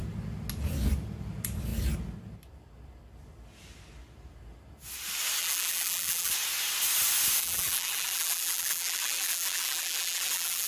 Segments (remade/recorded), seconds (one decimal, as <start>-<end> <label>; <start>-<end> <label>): 0.0-5.4 recorded; 5.4-6.3 remade; 6.3-7.4 recorded; 7.4-10.7 remade